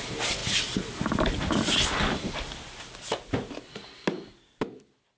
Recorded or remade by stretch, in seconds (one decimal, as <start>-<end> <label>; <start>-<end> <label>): 0.0-5.2 recorded